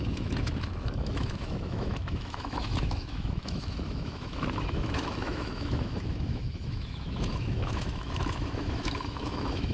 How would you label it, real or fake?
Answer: fake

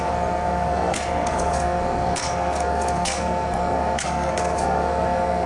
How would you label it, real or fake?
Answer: fake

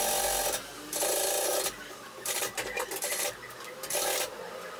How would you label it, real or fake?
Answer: real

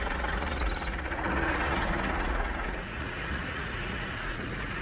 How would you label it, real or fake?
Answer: fake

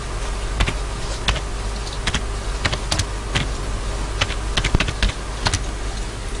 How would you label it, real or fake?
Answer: real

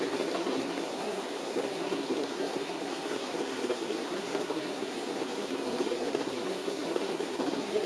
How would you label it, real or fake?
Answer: fake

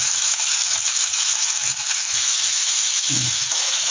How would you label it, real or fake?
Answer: fake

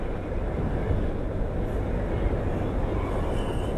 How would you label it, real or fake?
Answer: real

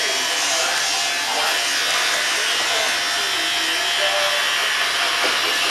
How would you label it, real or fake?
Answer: real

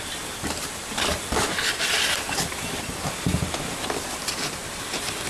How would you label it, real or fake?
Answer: fake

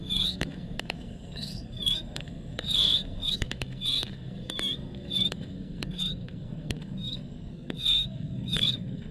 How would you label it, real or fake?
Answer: fake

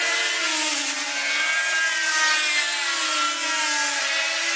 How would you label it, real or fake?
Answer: real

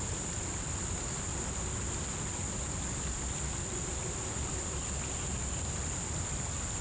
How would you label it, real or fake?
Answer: real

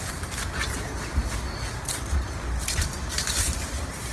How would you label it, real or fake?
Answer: real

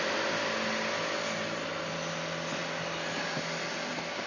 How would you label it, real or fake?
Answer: real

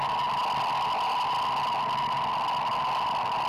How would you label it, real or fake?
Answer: real